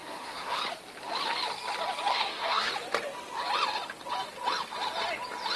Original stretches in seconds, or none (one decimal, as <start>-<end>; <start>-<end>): 0.6-2.1; 2.7-5.6